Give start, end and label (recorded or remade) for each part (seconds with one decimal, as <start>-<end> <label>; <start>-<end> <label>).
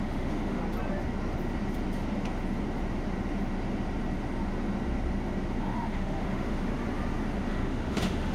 0.0-0.6 remade; 0.6-5.6 recorded; 5.6-6.7 remade; 6.7-7.5 recorded; 7.5-8.3 remade